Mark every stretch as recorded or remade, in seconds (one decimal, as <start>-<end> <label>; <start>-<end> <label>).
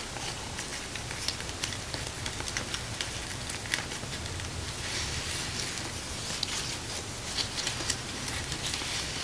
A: 0.0-9.2 recorded